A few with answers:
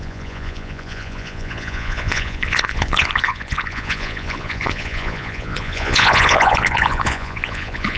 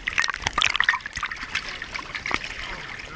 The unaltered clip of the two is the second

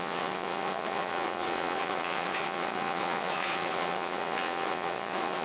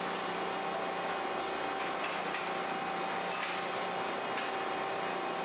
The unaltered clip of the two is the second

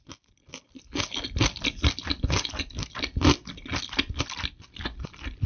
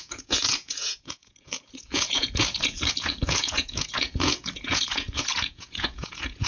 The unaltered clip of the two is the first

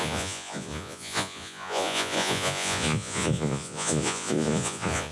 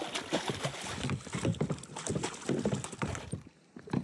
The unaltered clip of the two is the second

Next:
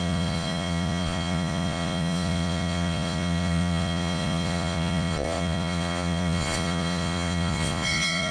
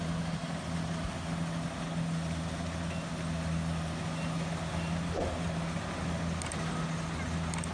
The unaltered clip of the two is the second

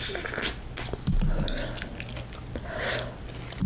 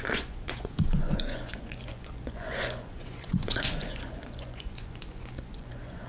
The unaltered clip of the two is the first